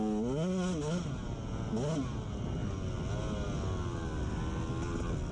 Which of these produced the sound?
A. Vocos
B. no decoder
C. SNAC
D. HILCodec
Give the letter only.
B